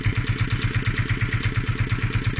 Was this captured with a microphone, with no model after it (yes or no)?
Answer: yes